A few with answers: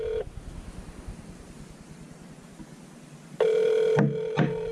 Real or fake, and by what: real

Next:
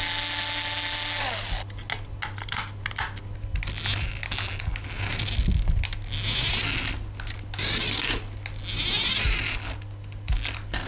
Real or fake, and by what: real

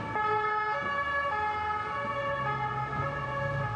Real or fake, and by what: real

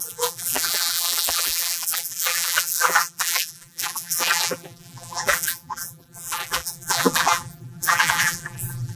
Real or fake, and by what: fake, vocoder, BigVGAN v2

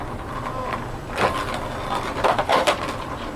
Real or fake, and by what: real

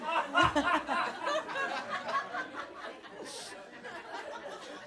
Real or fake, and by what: real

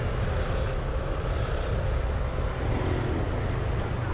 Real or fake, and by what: real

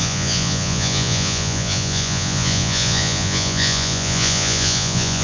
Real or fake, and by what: fake, vocoder, Vocos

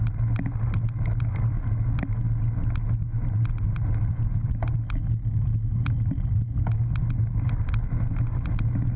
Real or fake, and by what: real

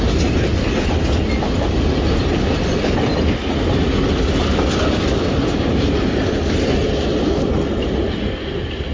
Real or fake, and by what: real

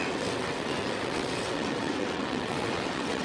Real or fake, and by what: fake, vocoder, WaveNeXt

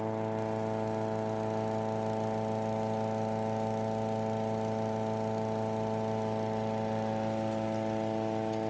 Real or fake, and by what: real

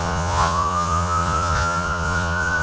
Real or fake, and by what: fake, vocoder, Vocos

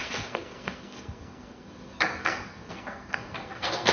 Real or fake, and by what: fake, codec, SNAC